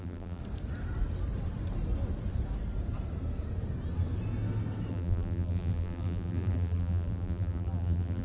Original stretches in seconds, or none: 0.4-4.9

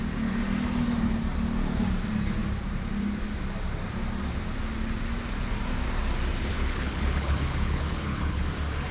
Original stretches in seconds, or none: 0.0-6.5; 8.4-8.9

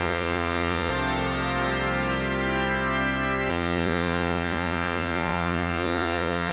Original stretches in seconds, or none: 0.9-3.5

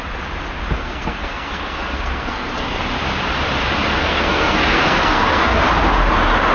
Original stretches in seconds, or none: 0.0-0.8; 2.8-4.0; 5.6-6.5